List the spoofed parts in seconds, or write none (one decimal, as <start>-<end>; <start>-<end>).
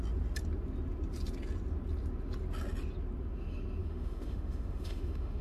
3.8-5.4